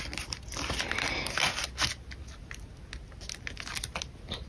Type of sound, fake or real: real